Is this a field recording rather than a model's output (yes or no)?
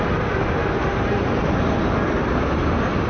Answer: yes